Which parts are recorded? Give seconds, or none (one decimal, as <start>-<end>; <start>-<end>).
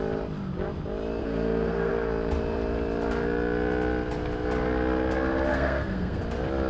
0.0-1.2; 1.9-5.5; 6.2-6.7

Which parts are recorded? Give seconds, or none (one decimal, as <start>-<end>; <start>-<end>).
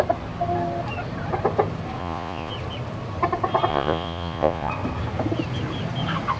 0.0-2.0; 2.5-3.7; 4.7-6.4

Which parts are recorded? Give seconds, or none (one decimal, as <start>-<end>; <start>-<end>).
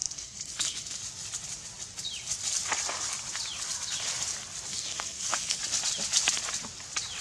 1.0-4.7; 5.6-7.2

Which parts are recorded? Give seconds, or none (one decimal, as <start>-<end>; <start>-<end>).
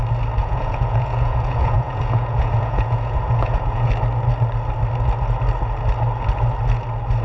0.0-0.4; 3.9-7.2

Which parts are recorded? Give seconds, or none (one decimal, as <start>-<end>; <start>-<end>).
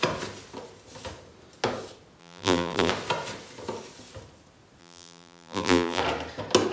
0.0-2.2; 2.9-4.8; 6.0-6.7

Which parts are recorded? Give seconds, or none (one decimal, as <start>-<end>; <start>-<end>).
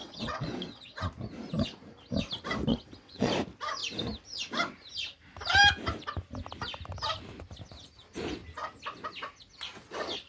1.0-2.7; 3.3-10.3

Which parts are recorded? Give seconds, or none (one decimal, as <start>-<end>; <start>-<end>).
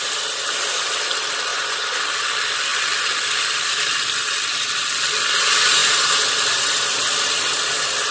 0.0-1.5; 2.0-8.1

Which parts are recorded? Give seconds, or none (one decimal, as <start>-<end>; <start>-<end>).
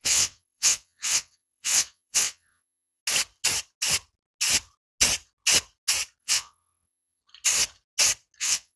3.0-6.2; 7.2-8.4